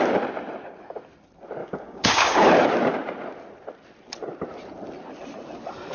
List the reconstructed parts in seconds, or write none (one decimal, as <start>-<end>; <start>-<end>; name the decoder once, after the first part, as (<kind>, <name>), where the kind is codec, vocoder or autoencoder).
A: 1.6-2.5 (codec, DAC)